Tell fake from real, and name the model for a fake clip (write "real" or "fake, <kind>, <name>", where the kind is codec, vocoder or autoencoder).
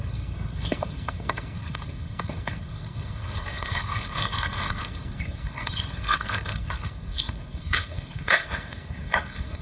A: fake, codec, SNAC